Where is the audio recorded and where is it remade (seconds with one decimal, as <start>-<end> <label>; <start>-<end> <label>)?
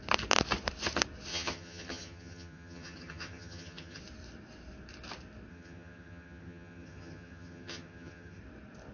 0.0-1.3 recorded; 1.3-4.0 remade; 4.0-5.5 recorded; 5.5-8.4 remade; 8.4-8.9 recorded